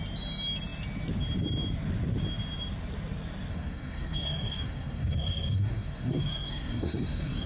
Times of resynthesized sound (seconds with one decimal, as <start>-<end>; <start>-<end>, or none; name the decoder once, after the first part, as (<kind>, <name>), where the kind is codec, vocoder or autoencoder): 3.5-7.5 (codec, SNAC)